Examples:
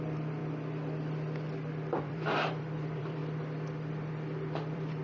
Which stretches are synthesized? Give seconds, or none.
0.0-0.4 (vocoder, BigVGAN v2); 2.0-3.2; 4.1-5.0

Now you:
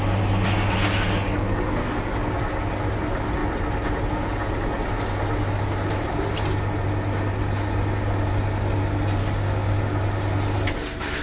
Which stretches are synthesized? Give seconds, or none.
9.2-9.8 (codec, DAC)

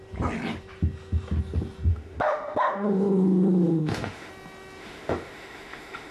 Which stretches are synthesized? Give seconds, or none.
1.9-4.3 (autoencoder, DAC-VAE); 4.8-6.1

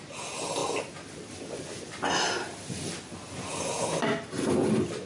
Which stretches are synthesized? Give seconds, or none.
none

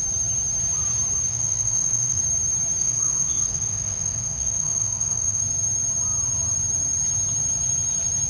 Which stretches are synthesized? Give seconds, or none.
1.3-2.2 (autoencoder, DAC-VAE); 2.8-5.4

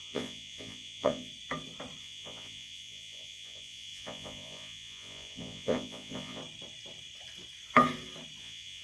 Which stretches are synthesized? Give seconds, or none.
0.0-1.3 (vocoder, Vocos); 2.0-6.4; 8.4-8.8

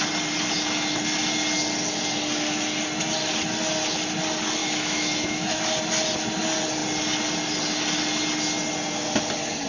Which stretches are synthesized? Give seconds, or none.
4.6-5.6 (autoencoder, DAC-VAE)

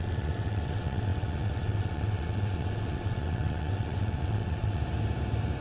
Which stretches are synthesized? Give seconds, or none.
0.0-4.8 (vocoder, WaveNeXt)